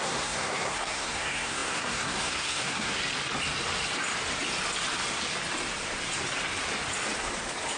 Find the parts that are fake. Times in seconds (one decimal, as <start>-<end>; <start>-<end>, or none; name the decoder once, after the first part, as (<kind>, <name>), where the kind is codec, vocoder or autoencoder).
0.0-3.0 (codec, SNAC)